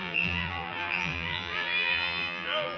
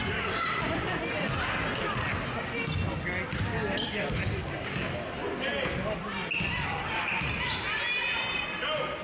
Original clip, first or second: second